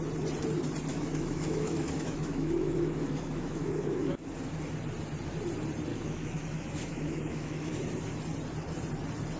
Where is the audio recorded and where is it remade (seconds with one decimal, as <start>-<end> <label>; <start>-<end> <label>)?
0.0-0.9 recorded; 0.9-4.2 remade; 4.2-5.9 recorded; 5.9-7.8 remade; 7.8-9.4 recorded